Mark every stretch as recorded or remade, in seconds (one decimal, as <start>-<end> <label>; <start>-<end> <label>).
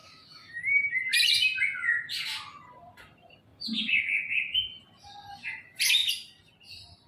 0.0-0.9 remade; 0.9-7.1 recorded